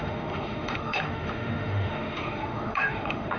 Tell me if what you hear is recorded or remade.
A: remade